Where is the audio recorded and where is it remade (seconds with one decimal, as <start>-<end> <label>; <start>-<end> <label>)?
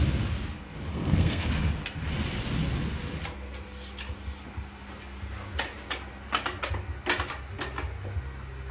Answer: 0.0-0.9 recorded; 0.9-1.5 remade; 1.5-8.7 recorded